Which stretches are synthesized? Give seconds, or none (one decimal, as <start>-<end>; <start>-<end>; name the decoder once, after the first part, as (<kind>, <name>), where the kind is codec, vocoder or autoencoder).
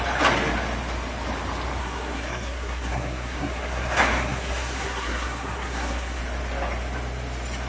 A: 1.8-6.2 (codec, SNAC)